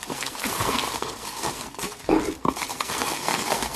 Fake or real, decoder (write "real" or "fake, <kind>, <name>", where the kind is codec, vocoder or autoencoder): fake, codec, SNAC